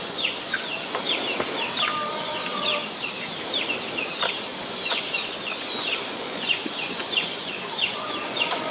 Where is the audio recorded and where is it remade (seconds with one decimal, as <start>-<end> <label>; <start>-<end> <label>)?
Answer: 0.0-1.0 remade; 1.0-2.1 recorded; 2.1-2.8 remade; 2.8-4.5 recorded; 4.5-8.7 remade